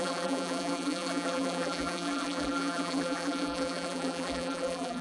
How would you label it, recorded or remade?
remade